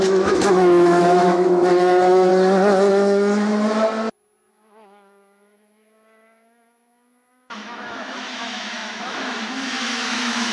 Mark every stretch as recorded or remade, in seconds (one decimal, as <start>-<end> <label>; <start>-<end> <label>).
0.0-2.3 remade; 2.3-2.9 recorded; 2.9-3.5 remade; 3.5-4.5 recorded; 4.5-10.5 remade